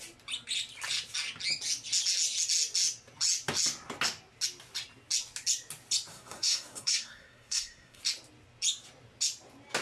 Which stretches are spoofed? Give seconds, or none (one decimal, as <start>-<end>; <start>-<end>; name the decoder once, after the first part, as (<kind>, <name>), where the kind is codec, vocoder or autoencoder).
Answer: 6.1-8.0 (codec, SNAC)